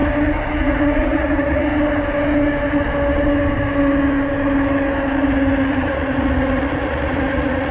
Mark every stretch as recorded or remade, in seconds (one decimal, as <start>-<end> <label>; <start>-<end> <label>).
0.0-0.6 recorded; 0.6-1.7 remade; 1.7-5.7 recorded; 5.7-7.7 remade